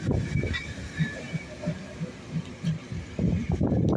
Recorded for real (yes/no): yes